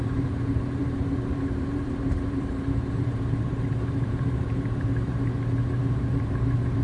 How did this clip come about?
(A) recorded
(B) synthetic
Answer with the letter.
B